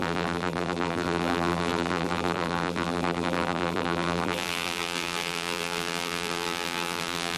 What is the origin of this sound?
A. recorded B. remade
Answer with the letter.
B